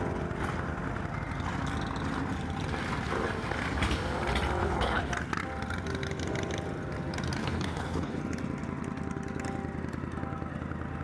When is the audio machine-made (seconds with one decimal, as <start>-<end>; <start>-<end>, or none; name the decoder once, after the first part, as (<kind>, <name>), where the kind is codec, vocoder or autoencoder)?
4.6-5.1 (codec, HILCodec); 7.4-8.2